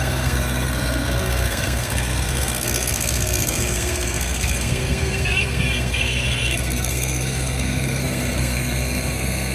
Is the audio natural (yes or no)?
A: no